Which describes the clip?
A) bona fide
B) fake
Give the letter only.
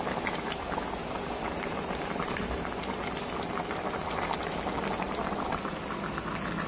A